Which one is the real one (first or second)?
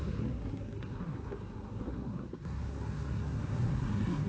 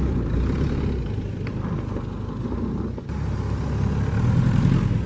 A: second